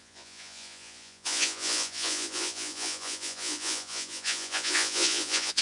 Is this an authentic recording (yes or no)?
no